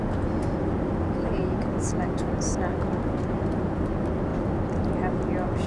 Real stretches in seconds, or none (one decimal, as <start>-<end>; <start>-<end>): 0.0-5.7